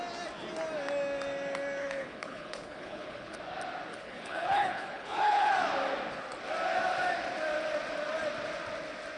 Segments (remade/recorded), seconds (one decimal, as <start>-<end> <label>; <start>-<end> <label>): 0.0-1.8 recorded; 1.8-3.4 remade; 3.4-3.9 recorded; 3.9-5.5 remade; 5.5-9.2 recorded